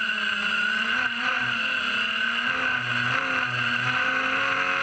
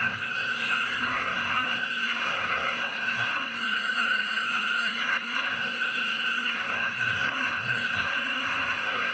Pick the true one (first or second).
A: first